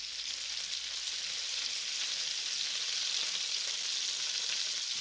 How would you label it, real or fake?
real